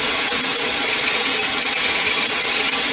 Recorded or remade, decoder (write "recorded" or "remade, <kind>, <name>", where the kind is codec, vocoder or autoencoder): remade, vocoder, WaveNeXt